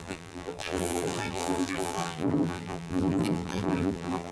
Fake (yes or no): yes